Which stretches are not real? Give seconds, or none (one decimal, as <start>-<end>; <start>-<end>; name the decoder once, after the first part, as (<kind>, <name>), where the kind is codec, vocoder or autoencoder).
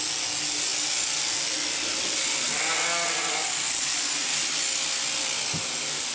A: none